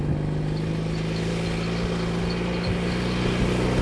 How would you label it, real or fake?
real